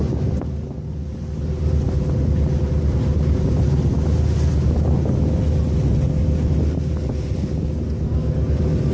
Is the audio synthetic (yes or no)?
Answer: no